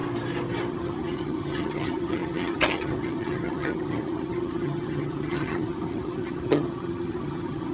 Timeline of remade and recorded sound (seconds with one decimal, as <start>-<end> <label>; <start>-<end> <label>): 0.0-0.7 recorded; 0.7-7.7 remade